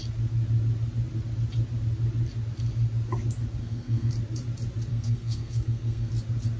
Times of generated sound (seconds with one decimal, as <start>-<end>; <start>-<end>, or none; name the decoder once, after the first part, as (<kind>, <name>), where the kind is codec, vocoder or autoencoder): 3.6-4.1 (codec, SNAC); 4.9-6.1